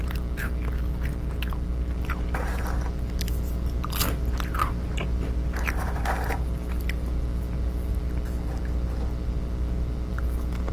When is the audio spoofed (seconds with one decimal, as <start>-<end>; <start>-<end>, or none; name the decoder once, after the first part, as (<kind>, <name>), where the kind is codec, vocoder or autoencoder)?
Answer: none